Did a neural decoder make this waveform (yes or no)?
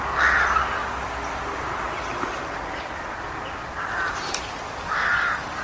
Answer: no